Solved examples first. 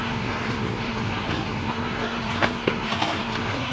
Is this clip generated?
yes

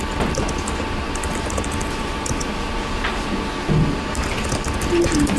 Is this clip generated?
no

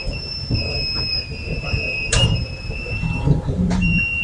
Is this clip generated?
yes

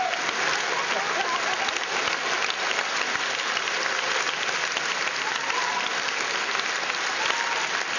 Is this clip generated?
yes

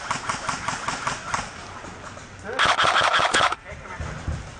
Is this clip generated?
no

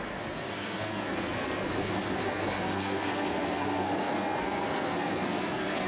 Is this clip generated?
yes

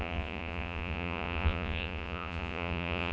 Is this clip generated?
yes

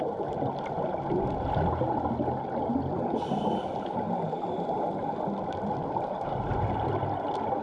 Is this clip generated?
no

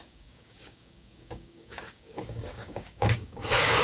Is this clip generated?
yes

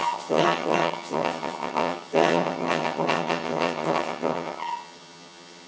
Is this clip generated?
yes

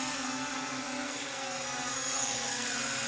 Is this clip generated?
yes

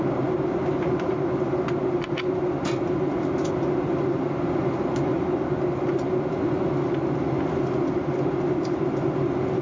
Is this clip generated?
no